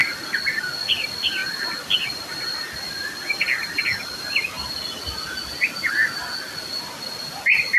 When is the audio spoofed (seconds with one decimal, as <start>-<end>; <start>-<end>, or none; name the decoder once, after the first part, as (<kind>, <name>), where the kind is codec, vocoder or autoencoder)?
none